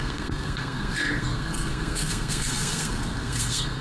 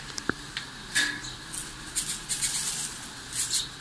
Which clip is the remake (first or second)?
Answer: first